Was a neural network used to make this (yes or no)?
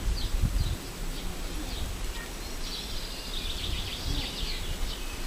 no